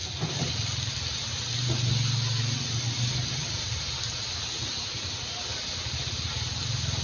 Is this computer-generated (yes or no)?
no